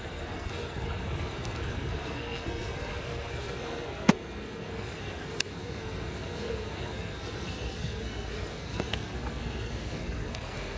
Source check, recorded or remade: remade